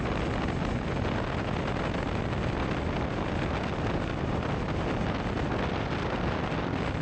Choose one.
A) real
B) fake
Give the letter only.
A